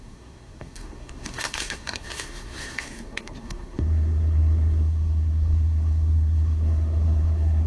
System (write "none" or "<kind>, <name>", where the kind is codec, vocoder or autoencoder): codec, SNAC